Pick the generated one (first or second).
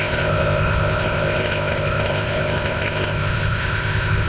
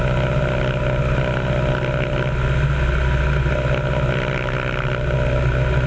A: first